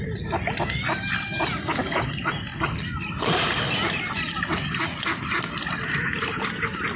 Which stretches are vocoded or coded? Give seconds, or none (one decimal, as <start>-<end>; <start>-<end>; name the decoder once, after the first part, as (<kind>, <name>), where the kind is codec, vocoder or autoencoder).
none